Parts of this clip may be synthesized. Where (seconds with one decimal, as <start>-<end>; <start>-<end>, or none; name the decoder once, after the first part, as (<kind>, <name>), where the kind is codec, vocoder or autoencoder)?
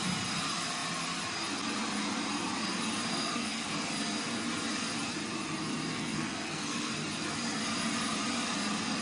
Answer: 3.1-3.7 (codec, SNAC); 5.9-6.9